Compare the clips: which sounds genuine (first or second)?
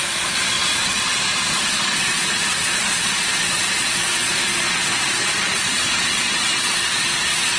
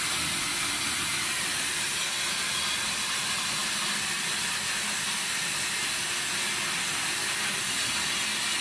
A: second